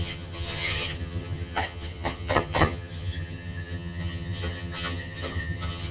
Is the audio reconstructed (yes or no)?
yes